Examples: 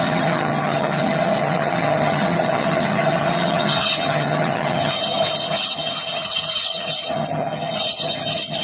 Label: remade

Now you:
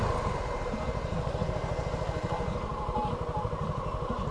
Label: recorded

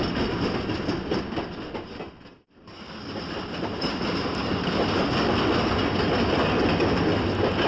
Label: recorded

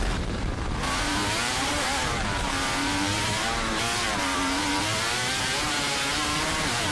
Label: remade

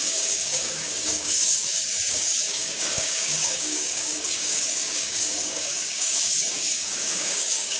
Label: remade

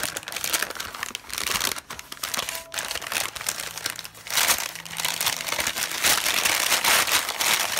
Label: recorded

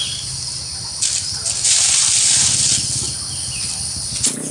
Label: recorded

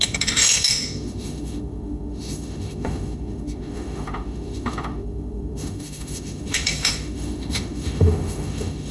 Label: remade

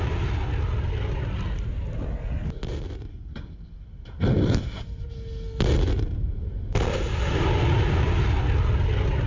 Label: recorded